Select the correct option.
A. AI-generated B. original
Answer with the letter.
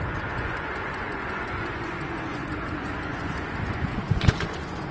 A